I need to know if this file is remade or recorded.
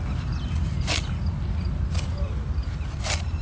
recorded